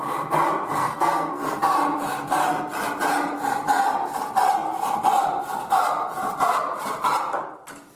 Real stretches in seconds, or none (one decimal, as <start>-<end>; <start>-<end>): 0.0-0.8; 1.6-8.0

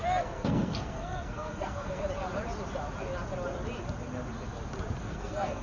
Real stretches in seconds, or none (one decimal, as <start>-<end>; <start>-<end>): 2.0-5.0